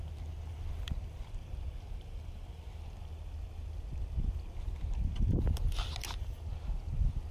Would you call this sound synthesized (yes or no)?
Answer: no